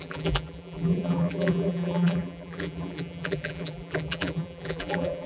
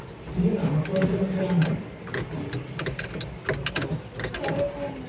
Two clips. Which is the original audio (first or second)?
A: second